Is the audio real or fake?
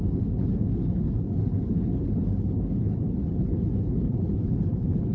fake